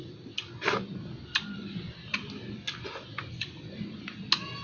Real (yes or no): yes